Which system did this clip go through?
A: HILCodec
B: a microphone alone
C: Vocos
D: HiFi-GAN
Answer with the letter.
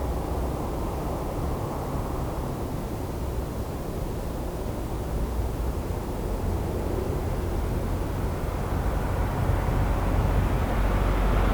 B